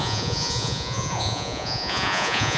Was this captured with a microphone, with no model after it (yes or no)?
no